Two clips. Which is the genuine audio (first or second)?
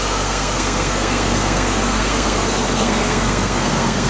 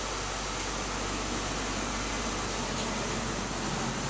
second